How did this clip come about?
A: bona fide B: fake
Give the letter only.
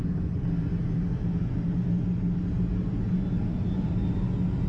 A